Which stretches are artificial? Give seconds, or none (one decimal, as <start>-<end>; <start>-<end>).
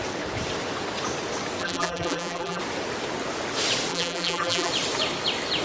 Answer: 1.6-2.6; 3.9-4.7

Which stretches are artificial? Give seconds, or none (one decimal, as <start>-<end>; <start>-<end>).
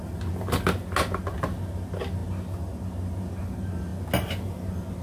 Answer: none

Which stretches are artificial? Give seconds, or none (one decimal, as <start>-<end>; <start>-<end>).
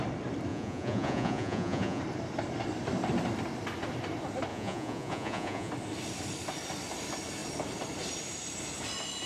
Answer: 0.5-2.0; 4.5-5.7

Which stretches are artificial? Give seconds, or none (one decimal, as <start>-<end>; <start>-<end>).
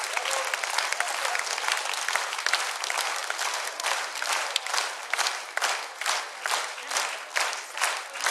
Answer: none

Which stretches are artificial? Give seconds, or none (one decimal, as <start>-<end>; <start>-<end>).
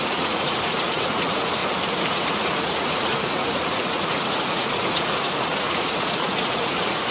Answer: 0.0-1.6; 2.1-7.1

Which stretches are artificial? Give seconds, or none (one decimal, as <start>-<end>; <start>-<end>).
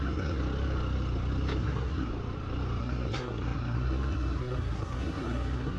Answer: 0.0-0.4; 1.6-2.1; 2.8-5.8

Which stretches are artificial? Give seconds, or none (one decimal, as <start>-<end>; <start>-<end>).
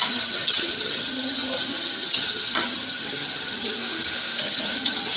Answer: 0.0-3.8; 4.4-5.2